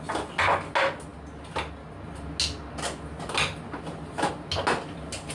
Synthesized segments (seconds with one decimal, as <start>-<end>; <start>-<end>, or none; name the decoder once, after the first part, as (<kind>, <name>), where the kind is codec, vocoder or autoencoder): none